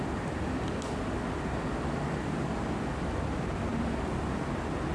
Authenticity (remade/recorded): recorded